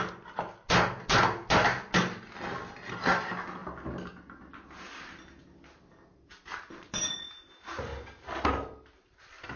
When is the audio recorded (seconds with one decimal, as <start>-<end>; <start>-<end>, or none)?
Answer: 0.0-9.6